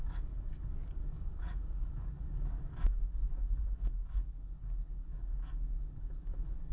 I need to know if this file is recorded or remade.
remade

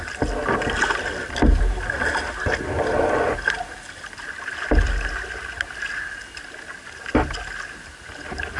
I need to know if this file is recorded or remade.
recorded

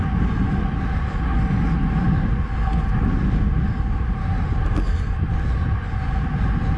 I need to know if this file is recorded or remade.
recorded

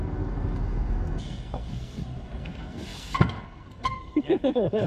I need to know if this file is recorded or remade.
remade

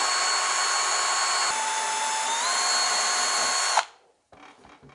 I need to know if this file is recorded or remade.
recorded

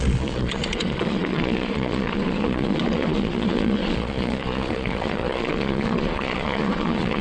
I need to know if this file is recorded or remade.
remade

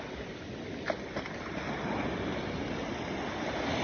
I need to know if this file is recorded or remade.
recorded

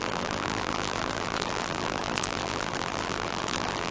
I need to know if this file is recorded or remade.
remade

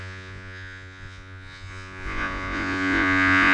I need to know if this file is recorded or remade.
remade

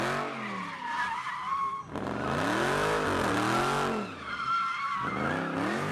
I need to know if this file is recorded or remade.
recorded